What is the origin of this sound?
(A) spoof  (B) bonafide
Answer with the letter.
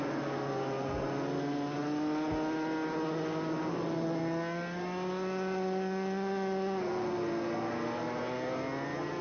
B